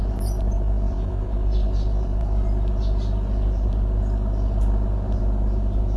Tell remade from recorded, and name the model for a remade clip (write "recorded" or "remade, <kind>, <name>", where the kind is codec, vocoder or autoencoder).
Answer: remade, vocoder, BigVGAN v2